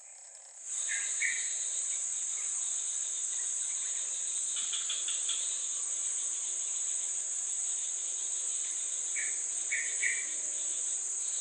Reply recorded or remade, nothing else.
recorded